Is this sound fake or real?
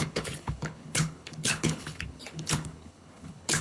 fake